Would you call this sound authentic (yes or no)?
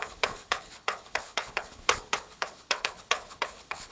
no